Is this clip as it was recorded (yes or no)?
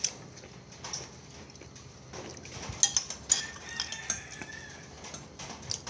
yes